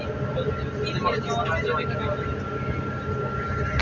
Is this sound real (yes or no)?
yes